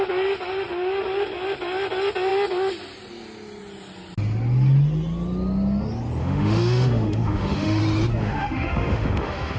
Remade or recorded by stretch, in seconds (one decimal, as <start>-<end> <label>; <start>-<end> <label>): 0.0-6.2 recorded; 6.2-7.8 remade; 7.8-8.2 recorded; 8.2-9.6 remade

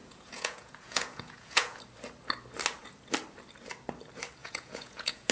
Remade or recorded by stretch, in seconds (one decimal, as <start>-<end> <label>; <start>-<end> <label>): 0.0-1.8 remade; 1.8-4.4 recorded; 4.4-5.3 remade

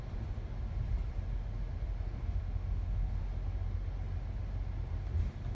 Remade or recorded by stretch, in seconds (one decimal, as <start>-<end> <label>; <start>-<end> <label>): 0.0-2.2 recorded; 2.2-3.2 remade; 3.2-5.5 recorded

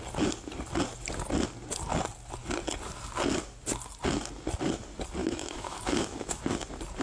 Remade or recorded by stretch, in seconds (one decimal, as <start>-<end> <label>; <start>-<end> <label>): 0.0-5.2 recorded; 5.2-6.4 remade; 6.4-7.0 recorded

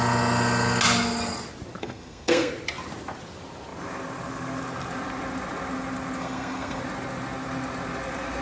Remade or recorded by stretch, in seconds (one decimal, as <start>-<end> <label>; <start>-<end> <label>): 0.0-1.8 recorded; 1.8-2.5 remade; 2.5-6.2 recorded; 6.2-6.8 remade; 6.8-8.4 recorded

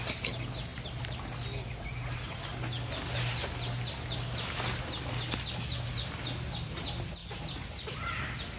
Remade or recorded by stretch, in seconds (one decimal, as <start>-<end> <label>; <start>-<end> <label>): 0.0-8.6 recorded